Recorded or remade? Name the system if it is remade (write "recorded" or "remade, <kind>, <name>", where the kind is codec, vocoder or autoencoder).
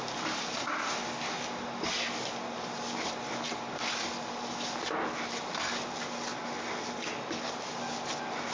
recorded